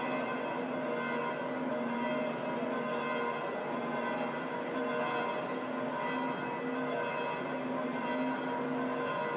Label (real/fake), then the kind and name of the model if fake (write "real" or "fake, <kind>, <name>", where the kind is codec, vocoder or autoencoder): real